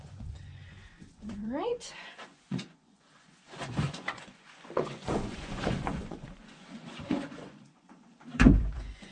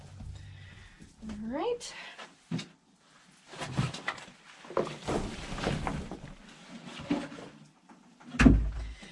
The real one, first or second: second